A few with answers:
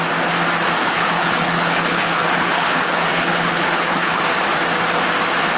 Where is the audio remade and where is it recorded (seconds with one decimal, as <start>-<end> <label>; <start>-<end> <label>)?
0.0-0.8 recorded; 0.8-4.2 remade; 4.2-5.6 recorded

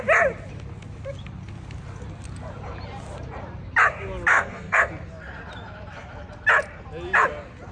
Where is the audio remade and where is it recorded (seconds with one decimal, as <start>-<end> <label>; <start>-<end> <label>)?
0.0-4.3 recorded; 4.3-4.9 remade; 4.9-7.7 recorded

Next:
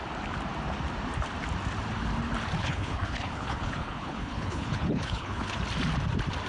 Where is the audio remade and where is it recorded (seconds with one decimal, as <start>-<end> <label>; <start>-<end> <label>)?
0.0-2.6 recorded; 2.6-5.6 remade; 5.6-6.5 recorded